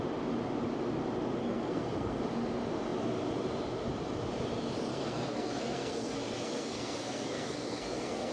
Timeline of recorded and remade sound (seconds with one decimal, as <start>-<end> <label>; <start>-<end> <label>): 0.0-1.4 recorded; 1.4-2.2 remade; 2.2-4.9 recorded; 4.9-8.3 remade